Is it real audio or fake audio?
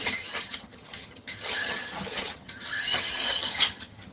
fake